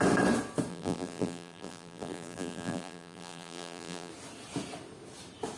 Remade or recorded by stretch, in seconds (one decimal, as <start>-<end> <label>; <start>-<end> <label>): 0.0-0.7 recorded; 0.7-4.1 remade; 4.1-5.6 recorded